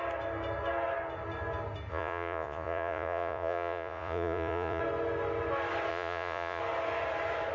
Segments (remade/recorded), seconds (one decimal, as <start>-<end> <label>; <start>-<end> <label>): 0.0-1.9 recorded; 1.9-4.8 remade; 4.8-5.9 recorded; 5.9-6.6 remade; 6.6-7.5 recorded